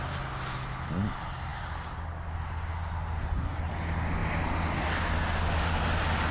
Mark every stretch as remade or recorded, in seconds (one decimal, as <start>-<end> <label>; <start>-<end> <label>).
0.0-3.2 recorded; 3.2-3.7 remade; 3.7-6.3 recorded